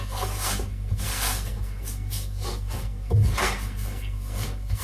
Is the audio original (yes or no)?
no